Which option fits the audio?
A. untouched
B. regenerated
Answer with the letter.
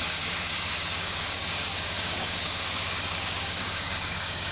B